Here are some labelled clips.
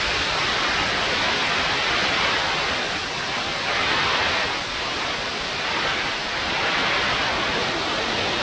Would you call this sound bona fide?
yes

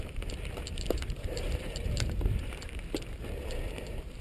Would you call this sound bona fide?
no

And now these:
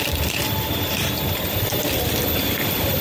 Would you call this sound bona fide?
yes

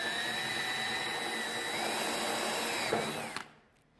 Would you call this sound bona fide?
yes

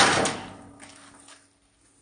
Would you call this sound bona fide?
yes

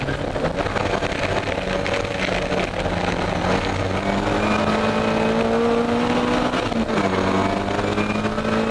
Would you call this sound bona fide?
yes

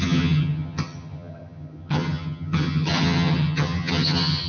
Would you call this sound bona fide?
no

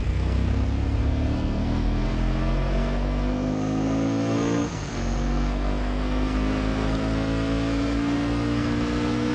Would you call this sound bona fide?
no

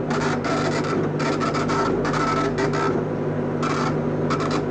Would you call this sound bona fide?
yes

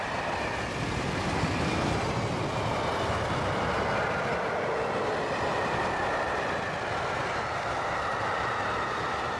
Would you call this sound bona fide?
yes